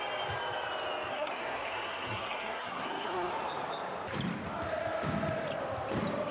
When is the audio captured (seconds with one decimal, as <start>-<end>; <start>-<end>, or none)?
0.0-1.1; 3.3-6.3